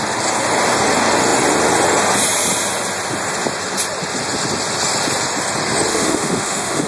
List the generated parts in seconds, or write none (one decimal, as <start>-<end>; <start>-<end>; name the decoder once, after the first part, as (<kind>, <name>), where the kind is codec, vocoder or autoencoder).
5.9-6.9 (autoencoder, DAC-VAE)